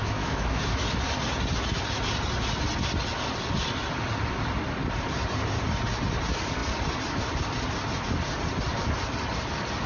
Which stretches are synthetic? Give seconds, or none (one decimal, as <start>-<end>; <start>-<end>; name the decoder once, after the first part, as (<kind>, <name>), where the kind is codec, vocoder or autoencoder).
0.0-0.7 (autoencoder, DAC-VAE)